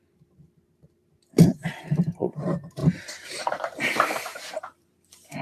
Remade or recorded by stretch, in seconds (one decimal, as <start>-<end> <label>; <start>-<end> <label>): 0.0-2.8 remade; 2.8-3.4 recorded; 3.4-5.4 remade